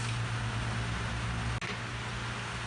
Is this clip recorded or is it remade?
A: recorded